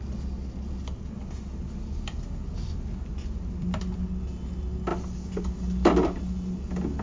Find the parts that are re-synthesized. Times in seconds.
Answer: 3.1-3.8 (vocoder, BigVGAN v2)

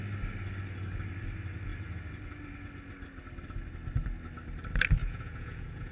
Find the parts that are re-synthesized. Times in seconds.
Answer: 5.0-5.9 (vocoder, Vocos)

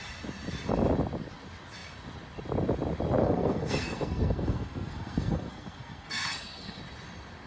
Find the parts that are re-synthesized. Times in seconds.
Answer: 3.2-6.8 (codec, SNAC)

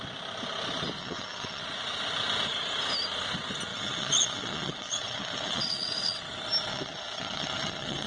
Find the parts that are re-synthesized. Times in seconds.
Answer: 1.0-1.6 (vocoder, WaveNeXt); 3.7-6.2; 6.7-8.1

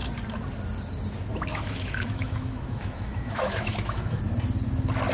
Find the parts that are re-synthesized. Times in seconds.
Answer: 1.5-4.2 (autoencoder, DAC-VAE)

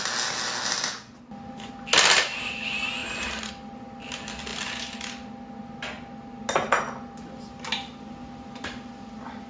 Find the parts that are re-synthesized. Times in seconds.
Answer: none

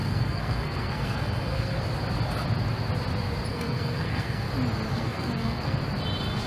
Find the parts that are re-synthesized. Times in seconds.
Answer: 0.0-1.8 (codec, SNAC); 3.5-4.5; 4.9-5.8

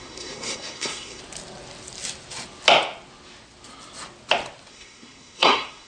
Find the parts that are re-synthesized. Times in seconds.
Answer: 0.0-1.2 (codec, SNAC); 4.7-5.9